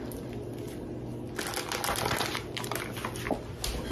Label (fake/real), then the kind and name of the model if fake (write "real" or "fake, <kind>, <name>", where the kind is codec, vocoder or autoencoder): real